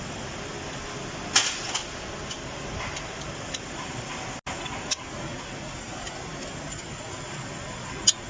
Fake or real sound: real